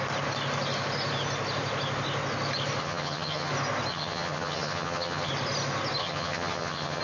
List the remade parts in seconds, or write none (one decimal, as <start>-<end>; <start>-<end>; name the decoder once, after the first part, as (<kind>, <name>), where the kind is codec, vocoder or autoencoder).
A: 2.8-3.5 (vocoder, HiFi-GAN); 3.9-5.3; 6.0-7.0